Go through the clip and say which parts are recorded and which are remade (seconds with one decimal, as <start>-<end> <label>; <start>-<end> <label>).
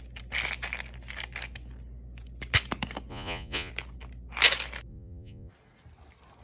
0.0-3.1 recorded; 3.1-3.7 remade; 3.7-4.9 recorded; 4.9-5.5 remade; 5.5-6.4 recorded